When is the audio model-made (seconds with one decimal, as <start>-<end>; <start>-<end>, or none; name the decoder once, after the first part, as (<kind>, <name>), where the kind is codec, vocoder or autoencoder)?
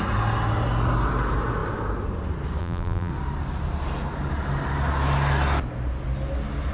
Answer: 2.6-3.1 (vocoder, BigVGAN v2)